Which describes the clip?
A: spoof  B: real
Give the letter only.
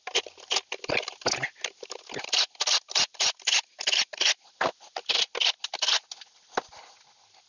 B